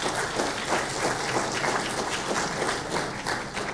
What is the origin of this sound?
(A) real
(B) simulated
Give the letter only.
A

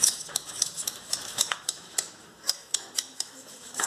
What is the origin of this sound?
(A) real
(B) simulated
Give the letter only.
B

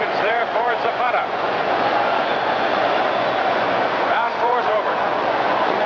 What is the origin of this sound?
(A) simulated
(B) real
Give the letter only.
A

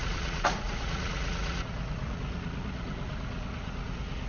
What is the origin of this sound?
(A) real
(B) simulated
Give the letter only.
B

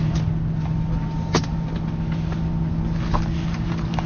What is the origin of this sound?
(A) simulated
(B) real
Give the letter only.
B